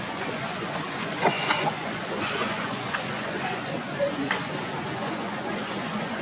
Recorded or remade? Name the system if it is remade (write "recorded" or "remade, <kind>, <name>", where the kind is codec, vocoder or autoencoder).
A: remade, vocoder, Vocos